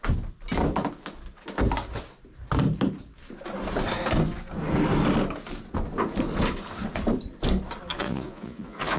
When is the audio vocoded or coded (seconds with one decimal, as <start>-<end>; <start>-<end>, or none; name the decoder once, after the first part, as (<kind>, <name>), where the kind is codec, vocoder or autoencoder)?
7.9-9.0 (vocoder, Vocos)